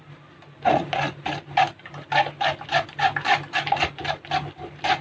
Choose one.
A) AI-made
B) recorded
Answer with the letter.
A